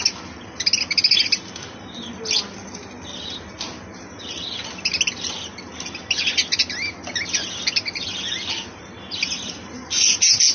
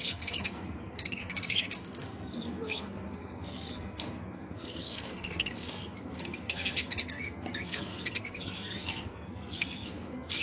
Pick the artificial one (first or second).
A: second